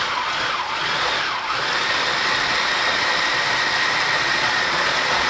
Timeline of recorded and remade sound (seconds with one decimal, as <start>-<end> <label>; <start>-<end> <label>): 0.0-1.1 remade; 1.1-4.3 recorded; 4.3-5.3 remade